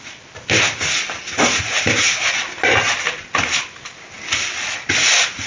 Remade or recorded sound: recorded